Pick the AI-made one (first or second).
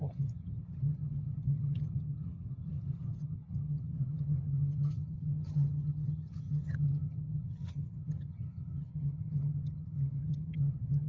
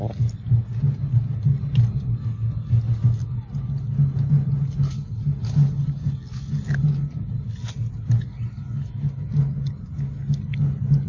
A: first